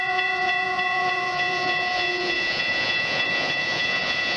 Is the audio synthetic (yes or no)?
yes